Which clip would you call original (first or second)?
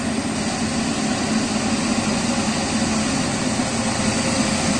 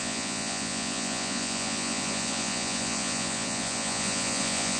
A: first